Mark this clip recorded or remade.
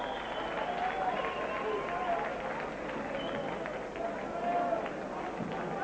recorded